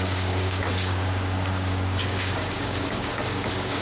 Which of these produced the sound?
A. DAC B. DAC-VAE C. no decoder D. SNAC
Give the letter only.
A